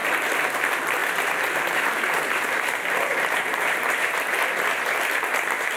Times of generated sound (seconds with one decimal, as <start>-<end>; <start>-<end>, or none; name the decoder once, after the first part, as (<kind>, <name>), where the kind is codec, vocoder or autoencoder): 1.0-4.5 (vocoder, BigVGAN v2)